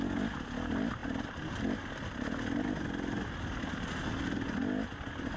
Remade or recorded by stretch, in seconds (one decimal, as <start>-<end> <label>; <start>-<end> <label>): 0.0-5.4 recorded